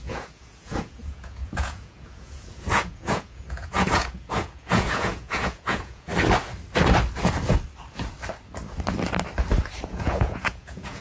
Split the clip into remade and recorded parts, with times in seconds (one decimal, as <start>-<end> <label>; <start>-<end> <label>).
0.0-6.1 remade; 6.1-9.9 recorded; 9.9-11.0 remade